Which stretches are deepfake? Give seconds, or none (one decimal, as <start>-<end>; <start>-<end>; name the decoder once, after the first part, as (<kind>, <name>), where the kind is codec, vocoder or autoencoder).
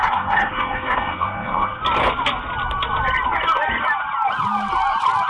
0.0-1.8 (codec, SNAC)